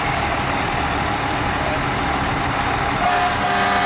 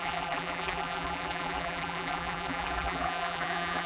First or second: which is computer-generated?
second